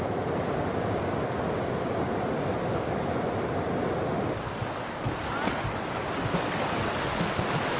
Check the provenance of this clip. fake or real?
real